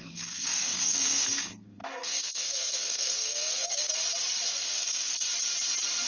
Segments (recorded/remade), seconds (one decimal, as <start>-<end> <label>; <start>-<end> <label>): 0.0-3.9 remade; 3.9-4.5 recorded; 4.5-5.3 remade; 5.3-6.1 recorded